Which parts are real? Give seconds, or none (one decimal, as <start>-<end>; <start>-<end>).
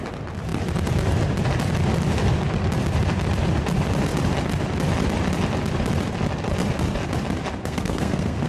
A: 0.0-7.6